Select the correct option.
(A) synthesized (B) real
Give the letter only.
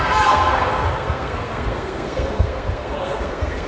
A